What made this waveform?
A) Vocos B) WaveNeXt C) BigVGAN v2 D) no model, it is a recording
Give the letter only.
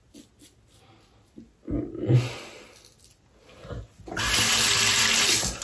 D